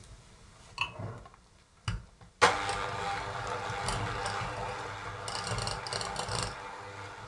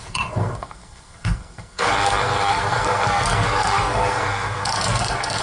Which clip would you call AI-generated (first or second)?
second